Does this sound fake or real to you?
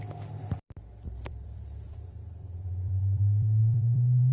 fake